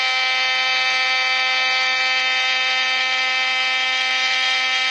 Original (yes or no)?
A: no